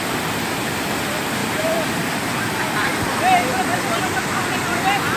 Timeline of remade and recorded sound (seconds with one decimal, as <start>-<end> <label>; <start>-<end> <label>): 0.0-1.4 recorded; 1.4-2.6 remade; 2.6-5.2 recorded